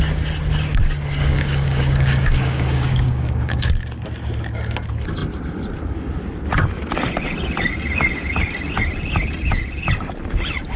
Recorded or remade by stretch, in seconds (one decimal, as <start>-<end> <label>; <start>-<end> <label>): 0.0-1.2 recorded; 1.2-3.7 remade; 3.7-10.8 recorded